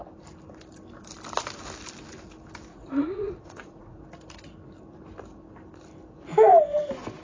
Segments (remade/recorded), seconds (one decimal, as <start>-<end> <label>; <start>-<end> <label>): 0.0-2.7 recorded; 2.7-4.0 remade; 4.0-7.2 recorded